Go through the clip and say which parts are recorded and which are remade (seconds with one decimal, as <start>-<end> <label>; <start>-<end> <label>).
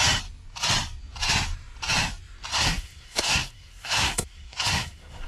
0.0-2.5 recorded; 2.5-5.3 remade